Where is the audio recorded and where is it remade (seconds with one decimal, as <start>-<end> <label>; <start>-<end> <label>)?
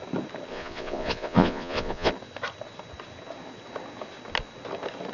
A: 0.0-0.5 recorded; 0.5-2.1 remade; 2.1-5.1 recorded